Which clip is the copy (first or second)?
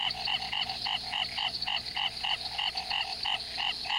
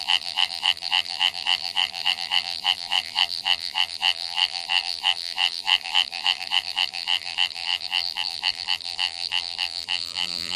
second